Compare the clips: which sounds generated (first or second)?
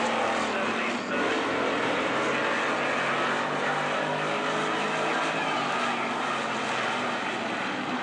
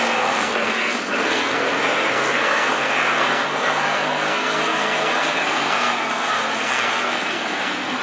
second